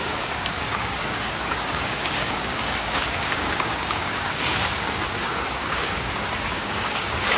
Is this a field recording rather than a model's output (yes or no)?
no